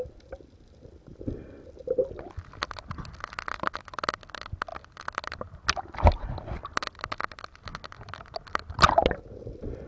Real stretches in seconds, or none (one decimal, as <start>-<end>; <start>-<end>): 0.0-9.9